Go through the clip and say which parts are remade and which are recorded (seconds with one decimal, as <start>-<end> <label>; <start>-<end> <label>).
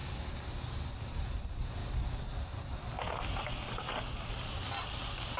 0.0-5.4 recorded